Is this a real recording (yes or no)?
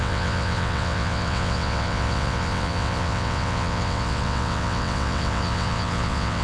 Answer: no